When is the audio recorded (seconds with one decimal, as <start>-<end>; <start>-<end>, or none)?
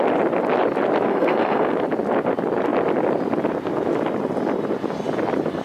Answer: 0.0-1.1; 1.7-5.6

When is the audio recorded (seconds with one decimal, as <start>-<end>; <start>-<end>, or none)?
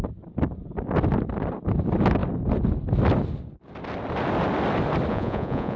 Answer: 0.0-5.1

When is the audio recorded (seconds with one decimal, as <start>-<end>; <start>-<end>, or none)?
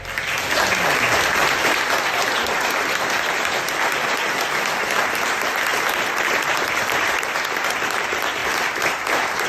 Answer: 0.0-9.5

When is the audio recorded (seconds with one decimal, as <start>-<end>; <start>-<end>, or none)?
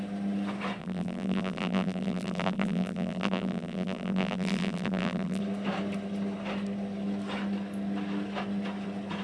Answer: 0.0-0.8; 5.4-9.2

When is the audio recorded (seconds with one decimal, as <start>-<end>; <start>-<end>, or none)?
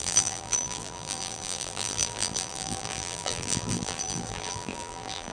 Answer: none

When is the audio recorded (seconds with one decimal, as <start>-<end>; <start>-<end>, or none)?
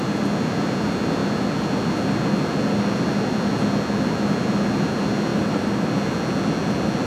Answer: 0.0-5.3; 5.9-7.1